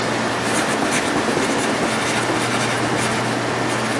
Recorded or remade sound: recorded